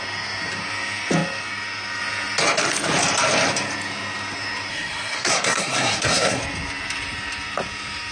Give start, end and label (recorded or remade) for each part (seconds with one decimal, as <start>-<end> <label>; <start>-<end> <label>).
0.0-4.7 recorded; 4.7-6.4 remade; 6.4-8.1 recorded